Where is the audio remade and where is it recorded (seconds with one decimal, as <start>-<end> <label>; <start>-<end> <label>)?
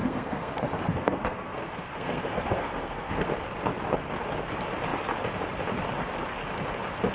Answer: 0.0-0.5 remade; 0.5-0.9 recorded; 0.9-3.3 remade; 3.3-7.1 recorded